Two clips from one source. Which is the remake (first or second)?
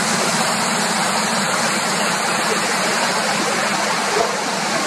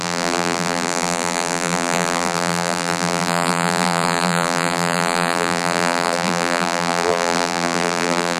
second